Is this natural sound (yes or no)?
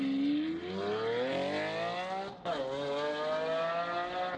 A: yes